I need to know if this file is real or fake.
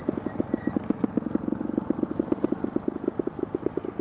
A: real